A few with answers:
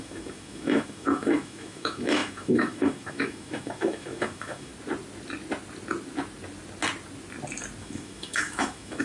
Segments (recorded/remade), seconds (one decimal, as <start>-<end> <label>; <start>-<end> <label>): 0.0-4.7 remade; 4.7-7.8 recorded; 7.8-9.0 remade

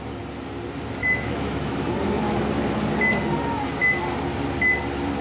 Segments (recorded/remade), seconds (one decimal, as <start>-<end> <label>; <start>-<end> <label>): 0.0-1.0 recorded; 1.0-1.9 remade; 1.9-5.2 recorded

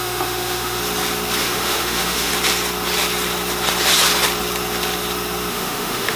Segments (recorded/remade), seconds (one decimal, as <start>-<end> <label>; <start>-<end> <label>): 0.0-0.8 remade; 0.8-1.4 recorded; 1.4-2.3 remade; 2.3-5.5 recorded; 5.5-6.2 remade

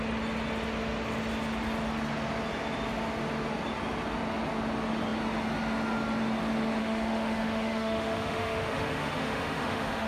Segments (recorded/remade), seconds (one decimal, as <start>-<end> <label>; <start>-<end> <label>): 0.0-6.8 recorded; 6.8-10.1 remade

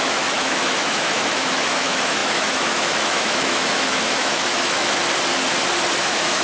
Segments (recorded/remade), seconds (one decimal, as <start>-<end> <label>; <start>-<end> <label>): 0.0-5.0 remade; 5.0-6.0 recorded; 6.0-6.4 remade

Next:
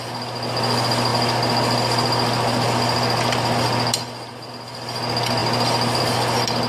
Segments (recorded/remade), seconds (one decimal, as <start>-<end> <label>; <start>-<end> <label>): 0.0-6.7 recorded